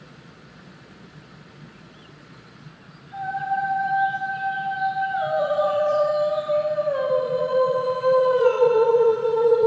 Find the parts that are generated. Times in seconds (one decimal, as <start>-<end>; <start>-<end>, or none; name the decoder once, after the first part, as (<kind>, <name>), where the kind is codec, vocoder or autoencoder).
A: 0.0-2.7 (vocoder, Vocos); 5.4-6.1; 7.2-9.7